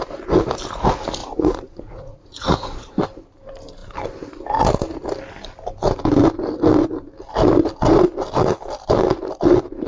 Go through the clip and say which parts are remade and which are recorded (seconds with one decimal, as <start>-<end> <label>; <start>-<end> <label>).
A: 0.0-1.2 recorded; 1.2-2.9 remade; 2.9-9.9 recorded